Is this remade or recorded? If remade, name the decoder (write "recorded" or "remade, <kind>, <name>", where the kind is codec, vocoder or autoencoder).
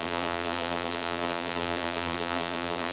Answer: remade, vocoder, BigVGAN v2